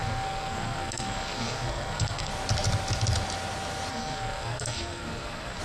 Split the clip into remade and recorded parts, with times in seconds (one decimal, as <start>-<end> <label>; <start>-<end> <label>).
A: 0.0-2.3 remade; 2.3-3.9 recorded; 3.9-5.6 remade